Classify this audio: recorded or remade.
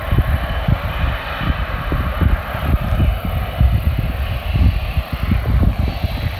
recorded